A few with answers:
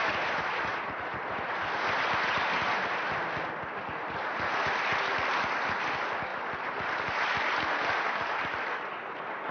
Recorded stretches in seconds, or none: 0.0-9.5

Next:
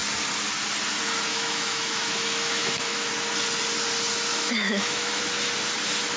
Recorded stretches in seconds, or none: 0.0-1.3; 3.1-4.3; 5.2-6.2

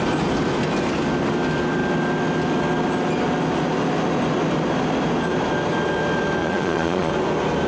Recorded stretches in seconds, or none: 0.0-6.4; 7.1-7.7

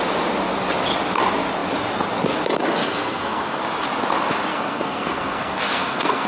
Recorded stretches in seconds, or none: 0.0-2.8; 3.6-4.5

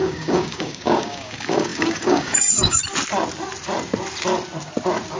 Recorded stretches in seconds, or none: 2.8-5.2

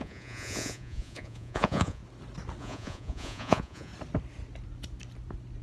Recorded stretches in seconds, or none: 2.0-2.6; 3.9-5.6